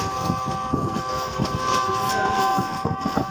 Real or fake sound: fake